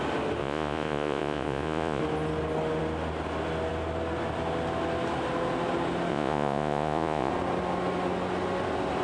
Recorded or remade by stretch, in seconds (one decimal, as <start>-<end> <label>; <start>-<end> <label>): 0.0-0.4 recorded; 0.4-2.0 remade; 2.0-6.1 recorded; 6.1-7.3 remade; 7.3-9.0 recorded